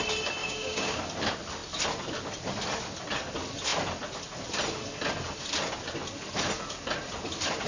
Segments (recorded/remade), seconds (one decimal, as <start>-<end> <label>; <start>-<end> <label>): 0.0-0.4 recorded; 0.4-1.0 remade; 1.0-7.7 recorded